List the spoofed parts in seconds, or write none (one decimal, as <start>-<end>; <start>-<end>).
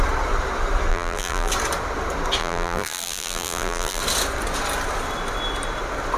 0.9-1.5; 2.4-4.0